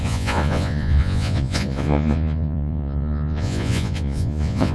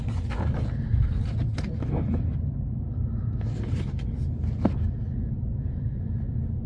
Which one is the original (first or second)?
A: second